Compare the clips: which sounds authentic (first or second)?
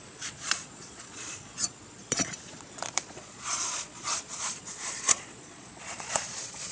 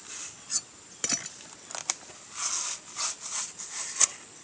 second